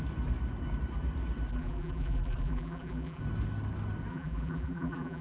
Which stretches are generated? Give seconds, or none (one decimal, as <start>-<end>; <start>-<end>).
1.5-3.2; 4.1-5.2